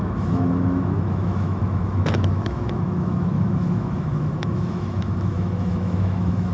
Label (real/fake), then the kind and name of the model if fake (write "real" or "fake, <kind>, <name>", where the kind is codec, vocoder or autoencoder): fake, autoencoder, DAC-VAE